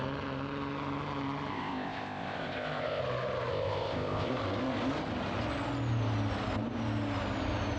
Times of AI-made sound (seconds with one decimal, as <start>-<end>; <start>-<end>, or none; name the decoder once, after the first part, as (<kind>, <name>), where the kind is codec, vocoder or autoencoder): 1.5-3.0 (codec, ZipCodec); 3.5-4.3